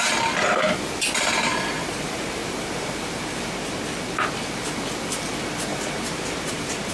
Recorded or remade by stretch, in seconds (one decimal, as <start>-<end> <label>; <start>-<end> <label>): 0.0-1.5 recorded; 1.5-3.4 remade; 3.4-5.7 recorded; 5.7-6.9 remade